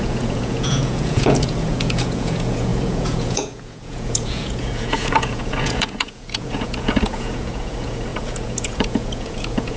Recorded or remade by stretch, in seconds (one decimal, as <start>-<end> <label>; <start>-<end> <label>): 0.0-9.8 remade